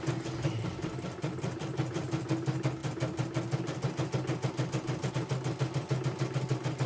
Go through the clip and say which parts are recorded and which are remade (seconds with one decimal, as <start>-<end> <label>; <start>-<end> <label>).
0.0-6.9 recorded